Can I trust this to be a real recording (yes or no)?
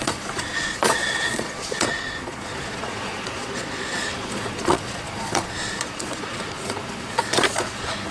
no